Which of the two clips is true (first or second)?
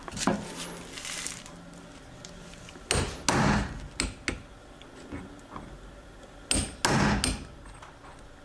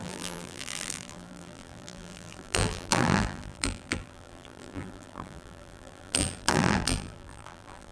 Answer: first